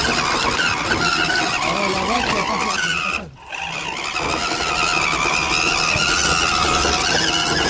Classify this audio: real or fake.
real